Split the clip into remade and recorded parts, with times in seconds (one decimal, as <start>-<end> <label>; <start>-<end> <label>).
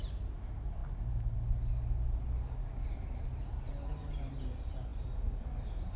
0.0-6.0 recorded